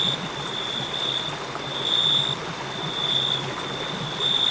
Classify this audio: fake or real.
real